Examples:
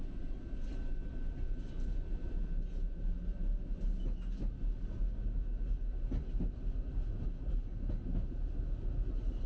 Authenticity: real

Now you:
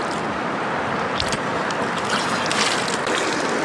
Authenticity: real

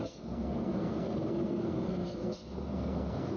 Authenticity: fake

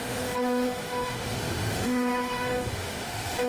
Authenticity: fake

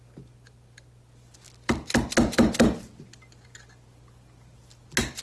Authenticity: real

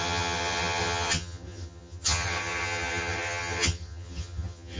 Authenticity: fake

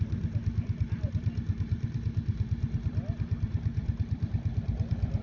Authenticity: fake